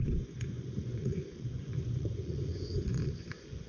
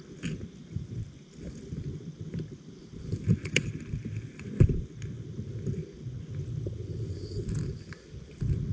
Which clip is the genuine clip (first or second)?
second